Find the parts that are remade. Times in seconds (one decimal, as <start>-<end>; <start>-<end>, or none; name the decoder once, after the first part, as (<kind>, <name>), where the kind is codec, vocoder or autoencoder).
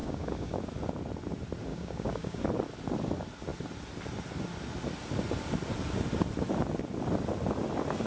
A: 0.0-0.6 (codec, DAC); 1.7-2.4